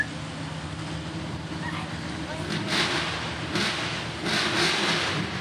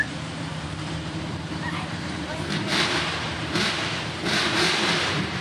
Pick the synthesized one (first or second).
second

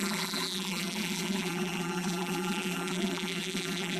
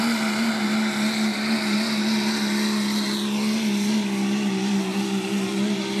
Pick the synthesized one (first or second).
first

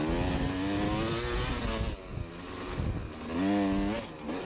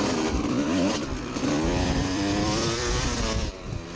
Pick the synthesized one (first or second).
second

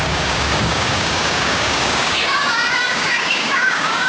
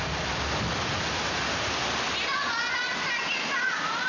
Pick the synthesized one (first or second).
first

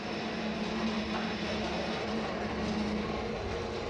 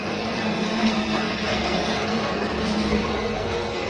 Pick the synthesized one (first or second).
second